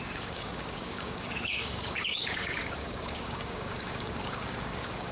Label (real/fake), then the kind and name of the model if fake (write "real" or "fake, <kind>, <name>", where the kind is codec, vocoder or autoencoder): fake, codec, DAC